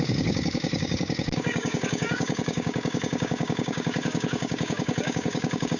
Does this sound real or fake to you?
fake